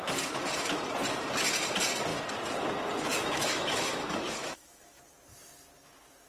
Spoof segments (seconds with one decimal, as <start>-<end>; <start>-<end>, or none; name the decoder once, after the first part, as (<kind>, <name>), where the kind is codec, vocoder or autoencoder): 3.1-5.0 (autoencoder, DAC-VAE)